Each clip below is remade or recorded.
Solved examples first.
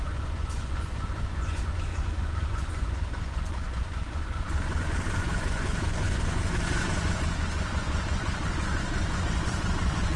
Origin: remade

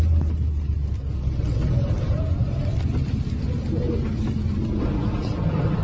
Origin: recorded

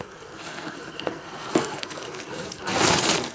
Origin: remade